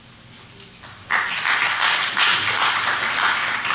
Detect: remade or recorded recorded